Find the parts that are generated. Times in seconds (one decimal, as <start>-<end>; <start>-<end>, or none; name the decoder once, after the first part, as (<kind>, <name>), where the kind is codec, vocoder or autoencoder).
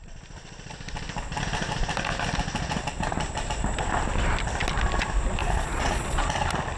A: 5.4-6.2 (vocoder, Vocos)